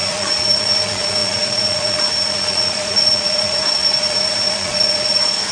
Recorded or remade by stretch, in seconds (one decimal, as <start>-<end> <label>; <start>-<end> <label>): 0.0-5.5 remade